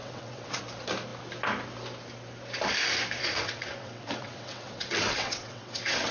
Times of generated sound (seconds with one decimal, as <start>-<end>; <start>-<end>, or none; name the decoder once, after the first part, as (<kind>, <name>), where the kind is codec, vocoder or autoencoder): 0.0-0.6 (vocoder, WaveNeXt); 3.2-6.1